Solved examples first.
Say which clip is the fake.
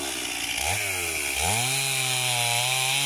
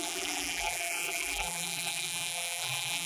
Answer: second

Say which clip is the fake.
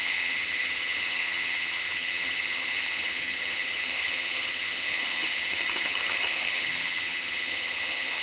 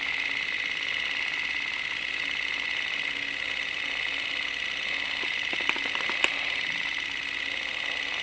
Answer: first